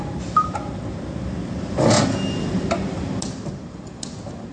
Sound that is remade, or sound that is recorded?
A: recorded